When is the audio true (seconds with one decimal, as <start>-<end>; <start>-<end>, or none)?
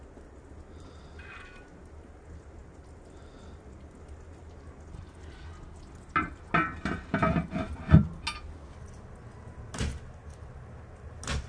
0.0-11.5